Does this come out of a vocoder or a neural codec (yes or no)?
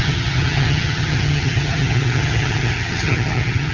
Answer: yes